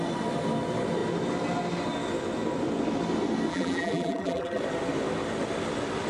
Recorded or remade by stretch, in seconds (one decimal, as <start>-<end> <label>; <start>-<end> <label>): 0.0-3.5 recorded; 3.5-4.6 remade; 4.6-6.1 recorded